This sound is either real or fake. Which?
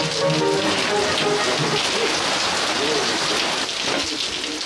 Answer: real